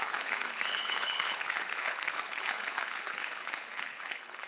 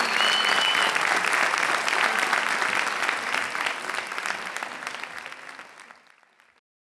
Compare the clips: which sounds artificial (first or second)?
first